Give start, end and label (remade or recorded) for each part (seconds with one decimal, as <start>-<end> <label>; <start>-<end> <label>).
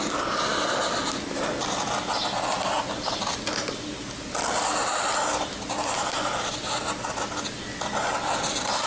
0.0-8.9 recorded